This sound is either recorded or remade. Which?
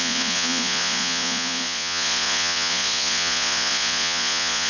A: remade